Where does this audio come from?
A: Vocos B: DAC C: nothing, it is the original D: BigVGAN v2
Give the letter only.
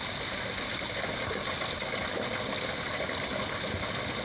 C